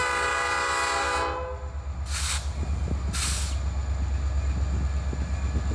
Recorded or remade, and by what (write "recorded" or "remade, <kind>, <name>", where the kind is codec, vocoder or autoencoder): recorded